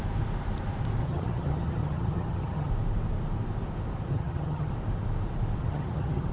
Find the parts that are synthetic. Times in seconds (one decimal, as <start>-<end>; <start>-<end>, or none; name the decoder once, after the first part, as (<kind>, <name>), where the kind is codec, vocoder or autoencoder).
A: 1.0-2.7 (vocoder, HiFi-GAN); 4.1-4.7; 5.6-6.3